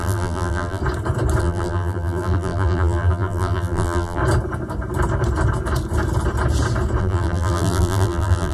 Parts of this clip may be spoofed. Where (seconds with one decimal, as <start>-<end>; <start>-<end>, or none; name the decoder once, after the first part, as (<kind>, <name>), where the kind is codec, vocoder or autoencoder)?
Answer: 0.0-0.8 (vocoder, BigVGAN v2); 1.4-4.2; 7.0-8.5